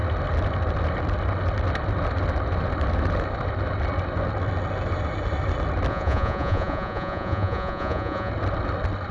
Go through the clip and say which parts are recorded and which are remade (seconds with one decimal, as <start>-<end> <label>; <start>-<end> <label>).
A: 0.0-5.9 recorded; 5.9-8.3 remade; 8.3-9.1 recorded